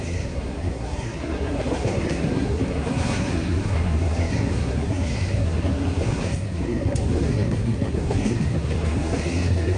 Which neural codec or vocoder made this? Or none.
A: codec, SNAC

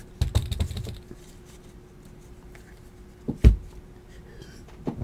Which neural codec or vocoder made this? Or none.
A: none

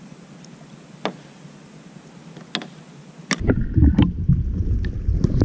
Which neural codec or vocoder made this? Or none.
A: none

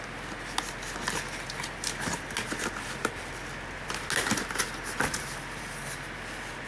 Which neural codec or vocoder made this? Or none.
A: none